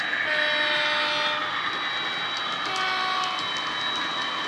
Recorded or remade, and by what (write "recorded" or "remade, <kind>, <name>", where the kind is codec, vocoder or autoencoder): recorded